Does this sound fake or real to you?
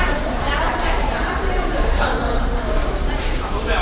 fake